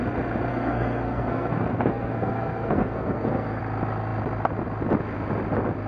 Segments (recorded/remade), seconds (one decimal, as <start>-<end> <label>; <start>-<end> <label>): 0.0-0.5 recorded; 0.5-3.6 remade; 3.6-5.9 recorded